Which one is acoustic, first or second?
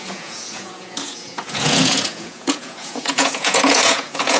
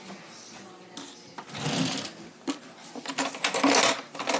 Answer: second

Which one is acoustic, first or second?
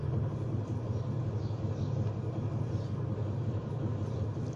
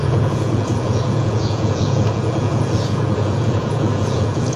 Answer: first